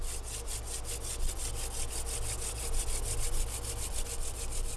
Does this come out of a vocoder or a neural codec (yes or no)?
no